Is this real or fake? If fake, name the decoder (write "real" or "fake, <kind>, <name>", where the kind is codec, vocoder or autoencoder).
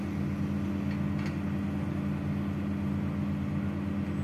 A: real